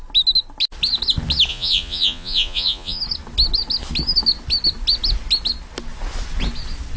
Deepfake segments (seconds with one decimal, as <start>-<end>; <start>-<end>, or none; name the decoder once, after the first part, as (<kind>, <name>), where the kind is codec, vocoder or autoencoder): 1.5-3.0 (vocoder, Vocos)